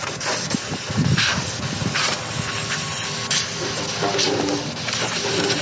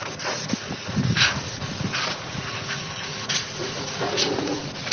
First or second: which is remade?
second